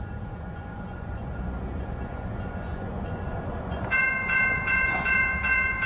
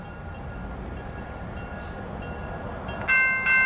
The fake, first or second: first